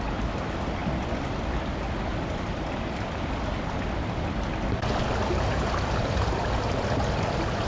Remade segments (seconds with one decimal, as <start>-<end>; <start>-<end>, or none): none